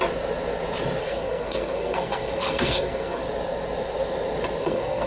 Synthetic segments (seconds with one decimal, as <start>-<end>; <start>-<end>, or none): 1.0-3.2; 4.6-5.1